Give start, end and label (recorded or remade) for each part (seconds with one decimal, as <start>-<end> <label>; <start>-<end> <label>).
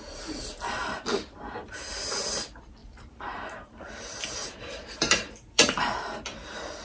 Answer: 0.0-2.8 recorded; 2.8-5.9 remade; 5.9-6.8 recorded